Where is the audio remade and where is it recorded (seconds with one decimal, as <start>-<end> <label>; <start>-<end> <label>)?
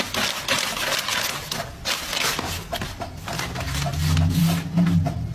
0.0-5.3 recorded